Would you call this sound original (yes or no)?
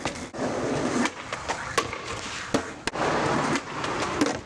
yes